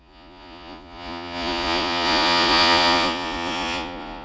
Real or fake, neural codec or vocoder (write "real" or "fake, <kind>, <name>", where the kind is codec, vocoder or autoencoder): fake, vocoder, Vocos